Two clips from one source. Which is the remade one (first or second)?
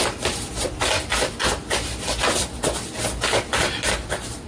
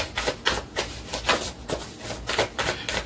first